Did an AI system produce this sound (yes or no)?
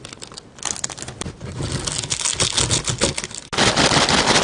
no